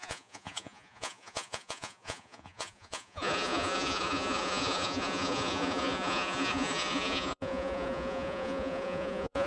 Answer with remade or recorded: remade